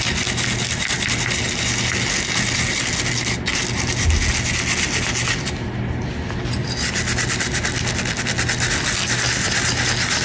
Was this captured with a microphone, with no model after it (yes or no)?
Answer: yes